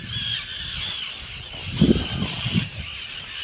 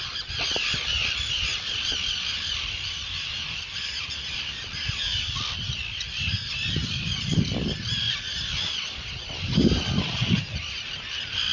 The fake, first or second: second